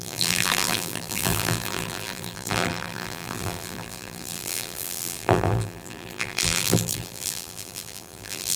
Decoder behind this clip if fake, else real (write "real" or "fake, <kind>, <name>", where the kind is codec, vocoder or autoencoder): fake, vocoder, BigVGAN v2